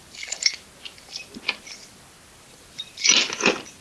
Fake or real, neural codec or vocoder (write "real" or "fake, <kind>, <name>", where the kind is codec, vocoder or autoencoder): real